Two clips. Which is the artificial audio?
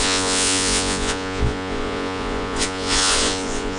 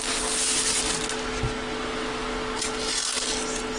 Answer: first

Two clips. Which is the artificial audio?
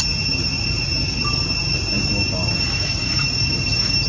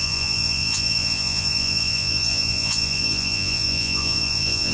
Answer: second